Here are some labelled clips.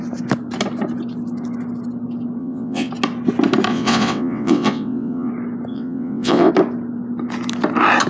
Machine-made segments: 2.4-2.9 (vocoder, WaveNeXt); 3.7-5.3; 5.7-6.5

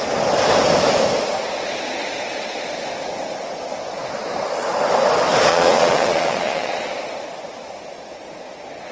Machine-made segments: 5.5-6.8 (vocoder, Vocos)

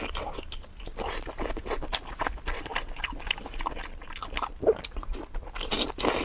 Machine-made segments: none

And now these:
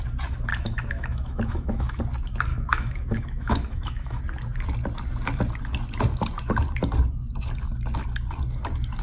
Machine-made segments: 0.5-2.0 (autoencoder, DAC-VAE); 2.5-4.2

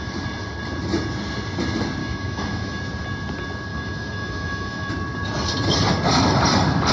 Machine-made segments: 2.0-2.8 (autoencoder, DAC-VAE); 3.7-4.9